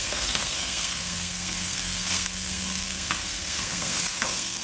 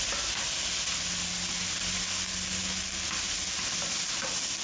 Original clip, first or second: second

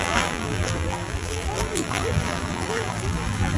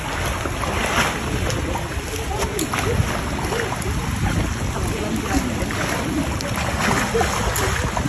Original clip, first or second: second